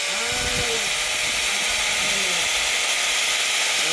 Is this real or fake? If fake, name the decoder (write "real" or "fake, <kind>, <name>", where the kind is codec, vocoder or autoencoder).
real